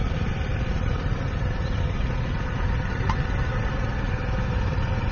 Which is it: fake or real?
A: real